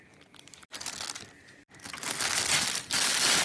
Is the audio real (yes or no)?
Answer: yes